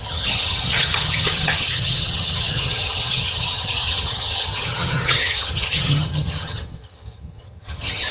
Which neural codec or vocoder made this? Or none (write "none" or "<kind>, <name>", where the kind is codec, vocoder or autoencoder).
vocoder, HiFi-GAN